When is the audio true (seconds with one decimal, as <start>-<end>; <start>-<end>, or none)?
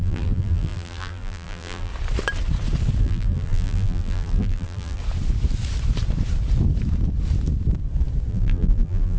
1.9-3.0; 5.0-8.3